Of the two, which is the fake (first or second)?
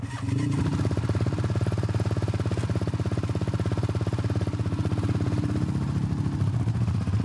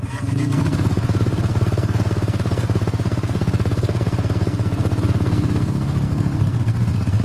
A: second